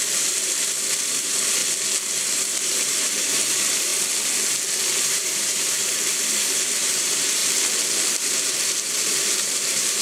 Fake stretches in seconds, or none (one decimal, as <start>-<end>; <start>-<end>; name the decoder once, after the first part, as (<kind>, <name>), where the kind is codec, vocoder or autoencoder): 0.0-1.6 (vocoder, BigVGAN v2); 2.3-3.9; 5.0-7.4; 8.1-10.0